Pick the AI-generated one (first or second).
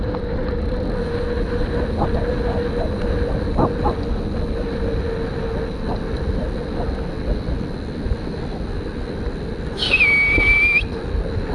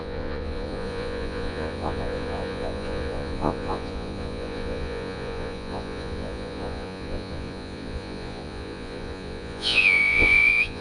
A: second